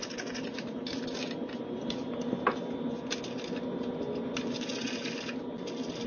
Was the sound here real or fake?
real